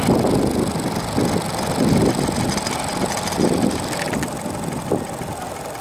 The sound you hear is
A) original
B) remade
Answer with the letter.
A